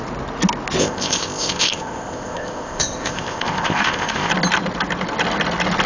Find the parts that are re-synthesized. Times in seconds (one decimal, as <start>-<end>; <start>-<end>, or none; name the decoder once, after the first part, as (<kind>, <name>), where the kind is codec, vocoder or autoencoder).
0.8-4.3 (codec, ZipCodec)